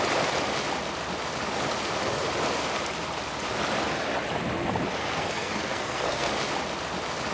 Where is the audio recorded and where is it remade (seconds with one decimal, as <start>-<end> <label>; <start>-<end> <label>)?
0.0-5.0 recorded; 5.0-6.3 remade; 6.3-7.3 recorded